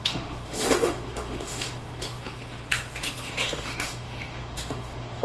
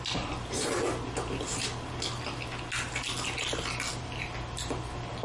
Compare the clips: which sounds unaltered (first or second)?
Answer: second